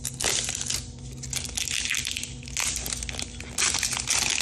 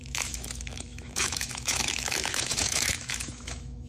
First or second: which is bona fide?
first